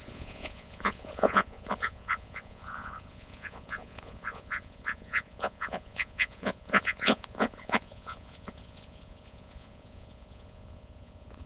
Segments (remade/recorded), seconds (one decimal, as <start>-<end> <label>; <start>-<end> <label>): 0.0-11.5 remade